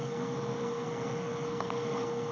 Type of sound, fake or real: fake